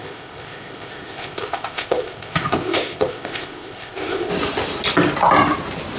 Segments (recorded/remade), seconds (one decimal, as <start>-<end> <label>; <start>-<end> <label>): 0.0-4.3 remade; 4.3-6.0 recorded